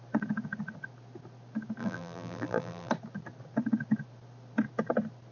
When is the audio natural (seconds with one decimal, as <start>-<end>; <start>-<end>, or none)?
0.0-1.8; 2.9-5.3